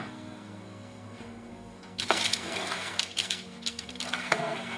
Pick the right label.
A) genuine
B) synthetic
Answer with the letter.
B